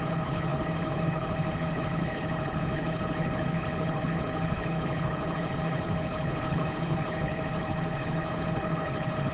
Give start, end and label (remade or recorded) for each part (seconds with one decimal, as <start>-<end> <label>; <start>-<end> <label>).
0.0-9.3 remade